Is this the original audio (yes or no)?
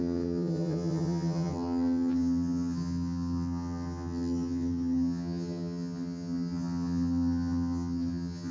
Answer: no